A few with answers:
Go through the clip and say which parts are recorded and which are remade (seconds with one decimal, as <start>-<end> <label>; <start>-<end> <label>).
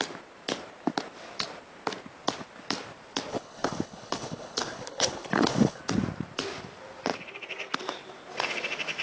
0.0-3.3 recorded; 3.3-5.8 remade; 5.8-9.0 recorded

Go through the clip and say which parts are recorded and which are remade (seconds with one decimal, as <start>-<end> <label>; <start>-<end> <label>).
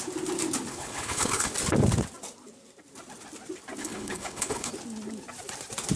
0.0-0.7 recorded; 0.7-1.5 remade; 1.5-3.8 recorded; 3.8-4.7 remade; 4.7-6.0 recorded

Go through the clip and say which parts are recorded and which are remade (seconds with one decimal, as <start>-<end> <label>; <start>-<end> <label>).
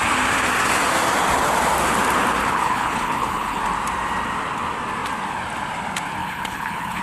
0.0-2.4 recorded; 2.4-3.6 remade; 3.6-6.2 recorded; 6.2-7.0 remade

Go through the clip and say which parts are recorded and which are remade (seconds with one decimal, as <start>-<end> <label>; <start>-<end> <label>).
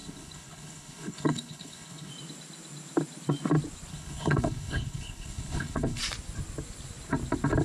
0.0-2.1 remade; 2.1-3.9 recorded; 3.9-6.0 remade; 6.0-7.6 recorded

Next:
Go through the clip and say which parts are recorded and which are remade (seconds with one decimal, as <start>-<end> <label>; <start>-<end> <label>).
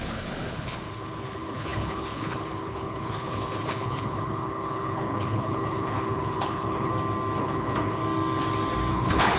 0.0-6.9 remade; 6.9-7.4 recorded; 7.4-8.0 remade; 8.0-8.9 recorded; 8.9-9.4 remade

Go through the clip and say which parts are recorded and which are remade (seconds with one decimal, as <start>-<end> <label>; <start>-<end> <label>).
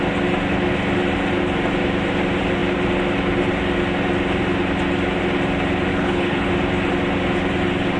0.0-5.9 recorded; 5.9-6.5 remade; 6.5-8.0 recorded